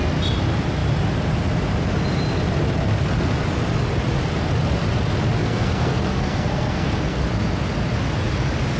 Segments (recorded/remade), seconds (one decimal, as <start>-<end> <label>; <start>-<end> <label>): 0.0-5.4 recorded; 5.4-7.2 remade; 7.2-8.8 recorded